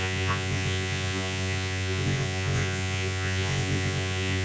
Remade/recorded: remade